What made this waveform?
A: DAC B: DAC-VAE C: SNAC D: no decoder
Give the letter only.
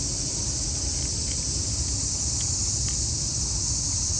D